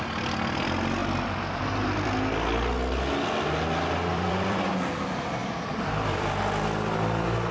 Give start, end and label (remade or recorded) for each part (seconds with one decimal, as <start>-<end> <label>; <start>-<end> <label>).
0.0-4.1 recorded; 4.1-4.7 remade; 4.7-5.4 recorded; 5.4-6.4 remade; 6.4-7.5 recorded